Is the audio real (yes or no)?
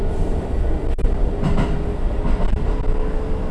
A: yes